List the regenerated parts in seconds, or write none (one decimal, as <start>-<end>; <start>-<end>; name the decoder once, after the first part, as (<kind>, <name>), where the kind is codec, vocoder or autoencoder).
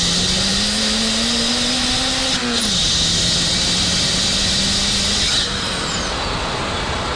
none